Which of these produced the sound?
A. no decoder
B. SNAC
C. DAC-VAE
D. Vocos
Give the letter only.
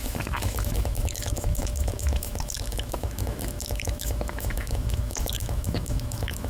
C